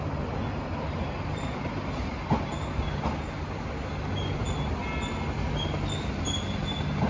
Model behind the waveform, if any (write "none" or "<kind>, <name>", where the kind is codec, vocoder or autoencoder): none